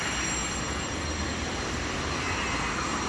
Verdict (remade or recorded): recorded